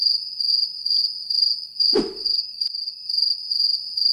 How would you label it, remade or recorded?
recorded